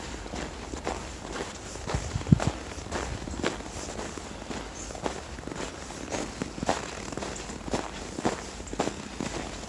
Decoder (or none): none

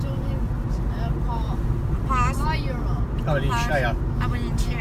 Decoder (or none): none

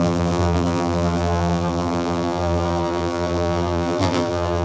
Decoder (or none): vocoder, BigVGAN v2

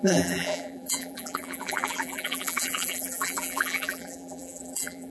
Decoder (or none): vocoder, BigVGAN v2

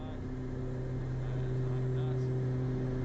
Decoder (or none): none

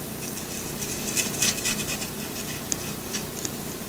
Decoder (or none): none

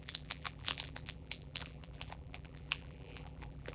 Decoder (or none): vocoder, BigVGAN v2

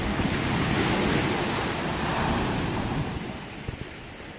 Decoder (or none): vocoder, BigVGAN v2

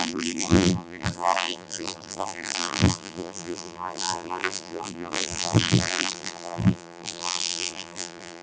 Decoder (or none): vocoder, BigVGAN v2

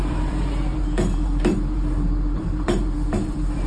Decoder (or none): vocoder, BigVGAN v2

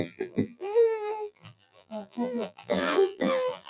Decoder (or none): vocoder, BigVGAN v2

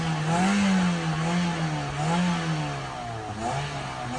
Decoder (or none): none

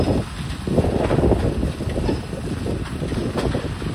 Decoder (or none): none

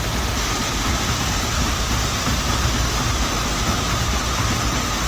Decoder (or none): none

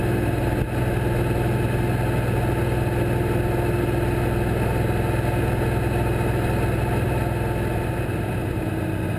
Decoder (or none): none